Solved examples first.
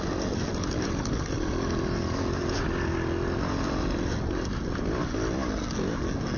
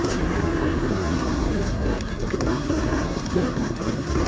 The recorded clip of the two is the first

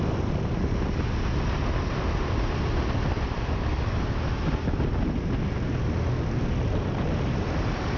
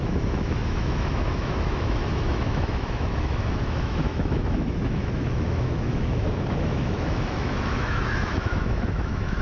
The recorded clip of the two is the first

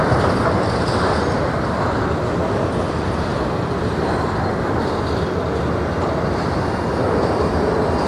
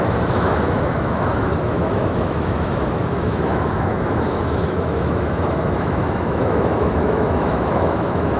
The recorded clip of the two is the first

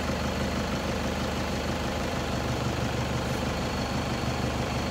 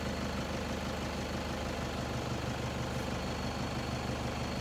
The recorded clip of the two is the second